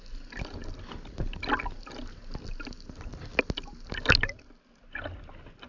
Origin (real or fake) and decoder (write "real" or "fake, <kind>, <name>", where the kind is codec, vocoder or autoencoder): real